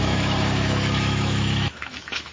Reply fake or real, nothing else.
fake